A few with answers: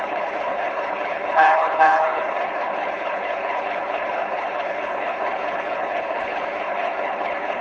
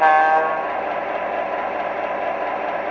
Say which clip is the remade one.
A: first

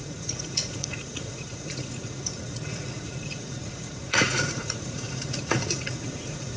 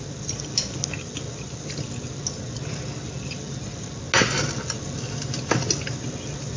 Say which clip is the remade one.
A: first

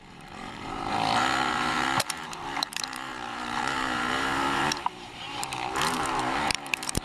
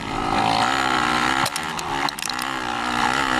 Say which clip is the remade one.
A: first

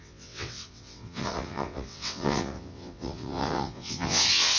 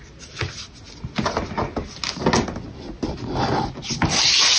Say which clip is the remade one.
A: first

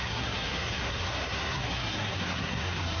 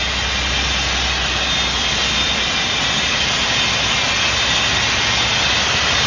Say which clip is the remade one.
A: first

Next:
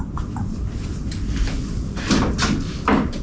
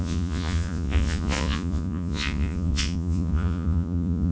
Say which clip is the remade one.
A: second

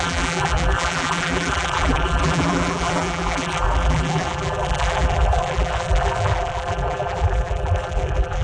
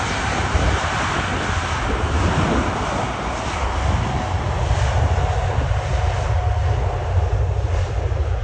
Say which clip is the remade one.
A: first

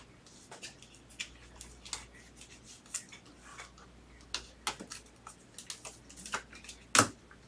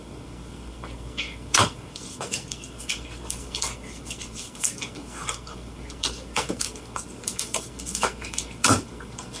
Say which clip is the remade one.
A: second